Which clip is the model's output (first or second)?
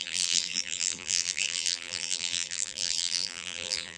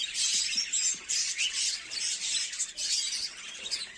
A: first